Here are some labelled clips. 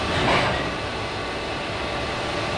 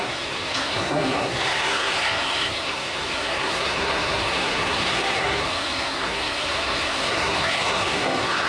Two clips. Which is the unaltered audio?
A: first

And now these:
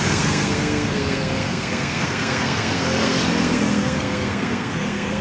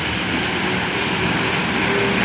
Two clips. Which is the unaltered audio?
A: second